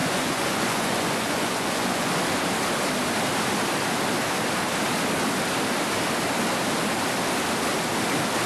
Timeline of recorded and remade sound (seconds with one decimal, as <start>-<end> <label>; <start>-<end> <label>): 0.0-2.1 remade; 2.1-8.5 recorded